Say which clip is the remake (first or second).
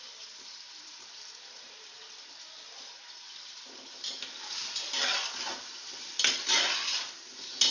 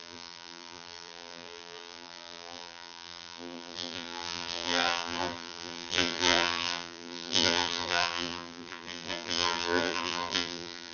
second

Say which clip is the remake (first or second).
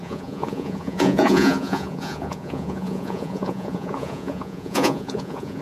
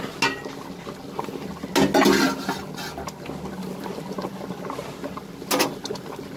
first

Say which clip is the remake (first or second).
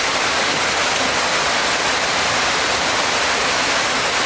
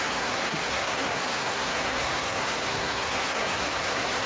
second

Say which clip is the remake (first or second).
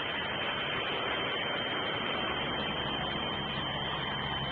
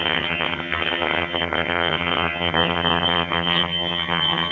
second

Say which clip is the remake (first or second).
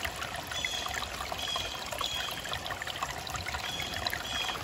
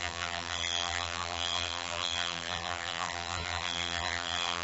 second